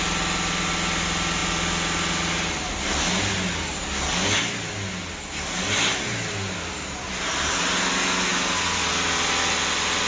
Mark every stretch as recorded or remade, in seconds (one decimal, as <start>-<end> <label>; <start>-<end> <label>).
0.0-10.1 recorded